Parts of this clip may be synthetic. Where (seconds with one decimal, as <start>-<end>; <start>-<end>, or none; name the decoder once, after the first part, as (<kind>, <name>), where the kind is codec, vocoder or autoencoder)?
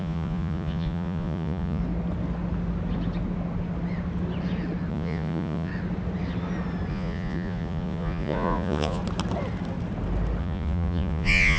0.0-1.8 (vocoder, Vocos); 4.9-5.7; 6.9-9.0; 10.4-11.6